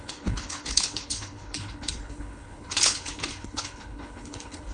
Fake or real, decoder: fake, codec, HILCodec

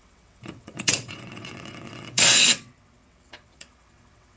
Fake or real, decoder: fake, vocoder, WaveNeXt